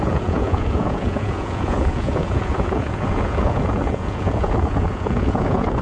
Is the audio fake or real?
fake